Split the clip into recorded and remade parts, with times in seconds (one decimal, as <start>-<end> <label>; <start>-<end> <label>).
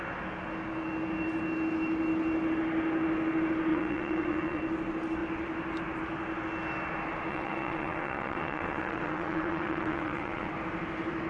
0.0-3.7 recorded; 3.7-4.6 remade; 4.6-7.3 recorded; 7.3-10.5 remade; 10.5-11.3 recorded